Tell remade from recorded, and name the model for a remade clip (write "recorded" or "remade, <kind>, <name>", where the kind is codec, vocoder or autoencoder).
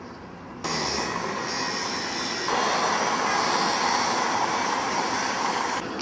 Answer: recorded